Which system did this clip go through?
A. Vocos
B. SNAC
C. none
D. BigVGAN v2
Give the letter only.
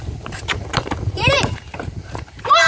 D